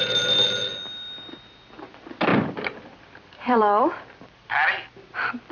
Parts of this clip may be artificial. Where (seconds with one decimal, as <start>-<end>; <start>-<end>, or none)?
2.3-4.7

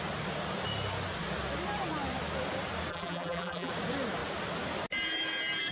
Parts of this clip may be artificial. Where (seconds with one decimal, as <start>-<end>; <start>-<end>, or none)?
2.9-3.7

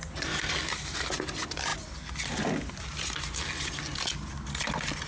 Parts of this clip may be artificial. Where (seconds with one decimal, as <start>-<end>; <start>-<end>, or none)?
none